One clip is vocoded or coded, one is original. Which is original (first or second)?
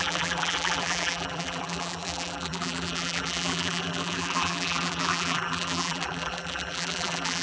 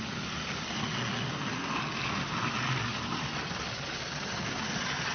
second